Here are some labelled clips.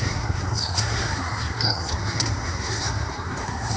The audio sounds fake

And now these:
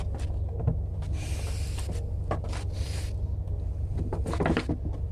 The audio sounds real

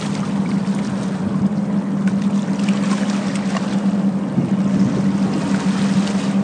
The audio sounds real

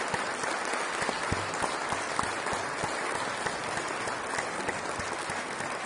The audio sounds real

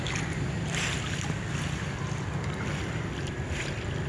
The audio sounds real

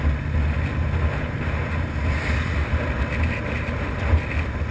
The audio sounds real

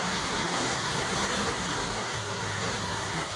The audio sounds fake